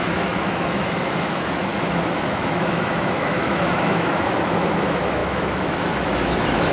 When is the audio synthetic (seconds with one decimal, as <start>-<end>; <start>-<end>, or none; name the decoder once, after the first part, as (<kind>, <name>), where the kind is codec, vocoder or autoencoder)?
0.0-6.7 (autoencoder, DAC-VAE)